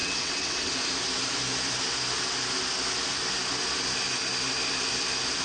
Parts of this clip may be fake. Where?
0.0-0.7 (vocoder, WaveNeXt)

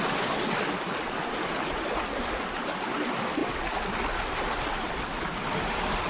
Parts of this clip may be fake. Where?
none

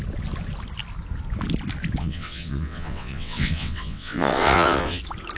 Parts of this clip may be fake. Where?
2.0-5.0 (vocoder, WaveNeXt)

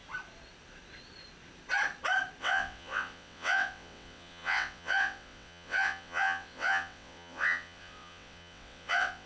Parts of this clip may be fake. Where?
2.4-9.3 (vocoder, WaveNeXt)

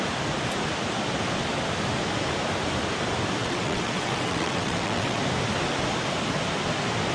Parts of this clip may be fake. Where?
3.4-5.2 (vocoder, WaveNeXt)

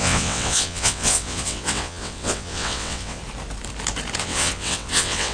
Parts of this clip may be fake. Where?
0.0-3.2 (vocoder, WaveNeXt); 4.2-5.3